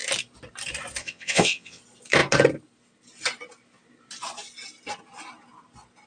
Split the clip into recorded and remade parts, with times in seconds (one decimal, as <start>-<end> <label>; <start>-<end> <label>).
0.0-1.0 recorded; 1.0-1.8 remade; 1.8-6.1 recorded